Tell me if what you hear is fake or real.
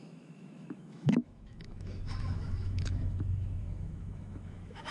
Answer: fake